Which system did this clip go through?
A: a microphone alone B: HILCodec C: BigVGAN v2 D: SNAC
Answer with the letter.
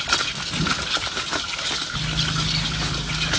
A